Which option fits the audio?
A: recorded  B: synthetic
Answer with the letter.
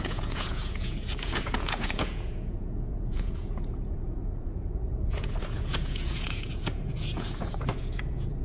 B